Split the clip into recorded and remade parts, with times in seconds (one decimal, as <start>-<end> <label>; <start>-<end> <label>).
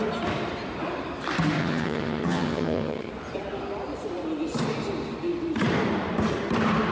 0.0-1.6 recorded; 1.6-3.1 remade; 3.1-6.9 recorded